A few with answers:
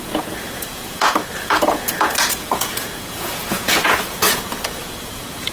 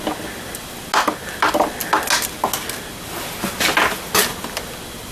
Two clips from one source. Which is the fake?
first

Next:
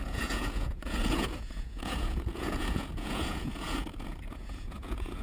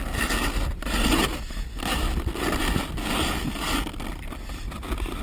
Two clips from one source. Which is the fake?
first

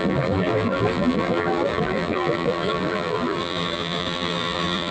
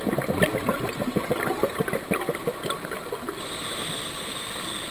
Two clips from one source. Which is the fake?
first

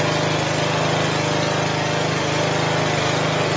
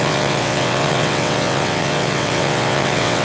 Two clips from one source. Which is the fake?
second